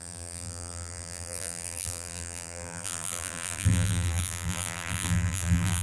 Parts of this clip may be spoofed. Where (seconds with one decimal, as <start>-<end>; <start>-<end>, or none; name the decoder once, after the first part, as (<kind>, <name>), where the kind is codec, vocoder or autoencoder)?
0.0-5.8 (vocoder, BigVGAN v2)